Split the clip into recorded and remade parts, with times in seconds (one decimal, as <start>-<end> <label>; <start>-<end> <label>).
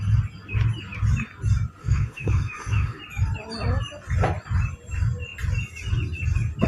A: 0.0-1.8 recorded; 1.8-3.0 remade; 3.0-6.7 recorded